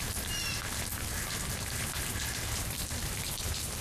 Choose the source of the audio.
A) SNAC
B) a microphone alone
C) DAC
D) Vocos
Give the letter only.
B